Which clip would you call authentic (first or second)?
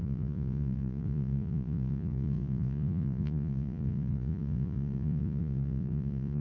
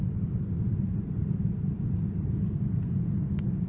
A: second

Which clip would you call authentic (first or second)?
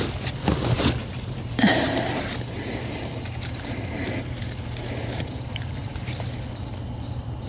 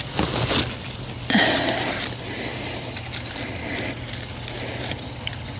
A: second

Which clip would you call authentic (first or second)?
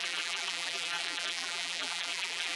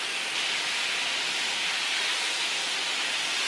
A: second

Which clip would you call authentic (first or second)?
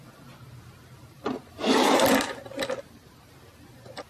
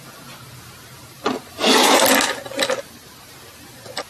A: second